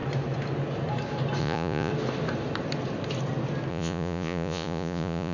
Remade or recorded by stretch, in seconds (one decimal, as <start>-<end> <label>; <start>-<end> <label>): 0.0-1.4 recorded; 1.4-1.9 remade; 1.9-3.7 recorded; 3.7-5.3 remade